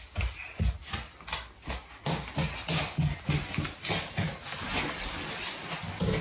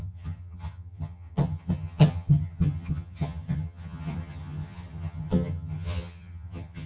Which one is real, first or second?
first